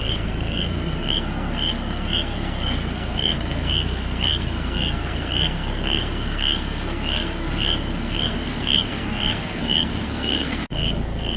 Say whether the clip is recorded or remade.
remade